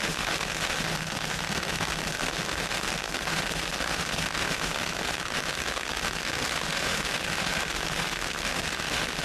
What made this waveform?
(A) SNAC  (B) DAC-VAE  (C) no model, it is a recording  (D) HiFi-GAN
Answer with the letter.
B